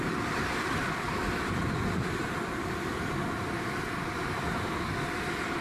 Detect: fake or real real